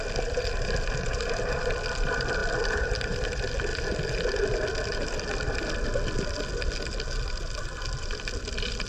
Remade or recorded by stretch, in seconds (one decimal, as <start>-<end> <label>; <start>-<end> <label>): 0.0-8.9 recorded